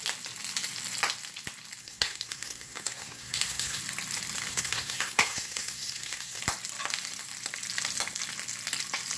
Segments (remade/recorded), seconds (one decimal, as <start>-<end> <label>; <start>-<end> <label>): 0.0-1.8 recorded; 1.8-3.8 remade; 3.8-4.5 recorded; 4.5-6.4 remade; 6.4-9.2 recorded